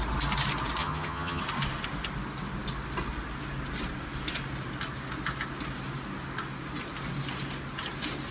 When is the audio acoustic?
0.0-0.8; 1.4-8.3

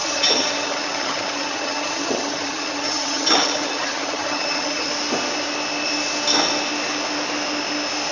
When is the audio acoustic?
4.9-8.1

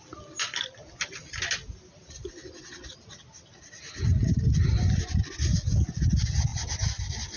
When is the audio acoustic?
0.0-7.4